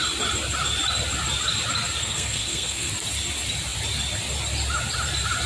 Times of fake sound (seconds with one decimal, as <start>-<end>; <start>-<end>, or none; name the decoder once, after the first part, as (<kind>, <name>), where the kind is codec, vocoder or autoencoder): 2.0-2.9 (codec, SNAC)